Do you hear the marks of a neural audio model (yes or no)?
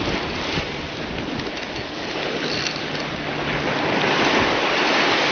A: no